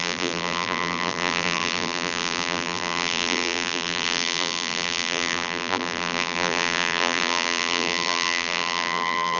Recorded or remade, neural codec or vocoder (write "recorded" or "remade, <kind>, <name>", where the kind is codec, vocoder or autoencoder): remade, vocoder, BigVGAN v2